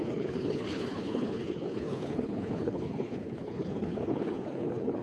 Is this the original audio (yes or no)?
no